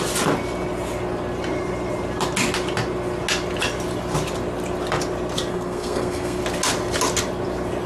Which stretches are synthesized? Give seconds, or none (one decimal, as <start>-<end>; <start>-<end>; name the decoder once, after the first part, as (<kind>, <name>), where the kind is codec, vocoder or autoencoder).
5.5-6.4 (codec, SNAC)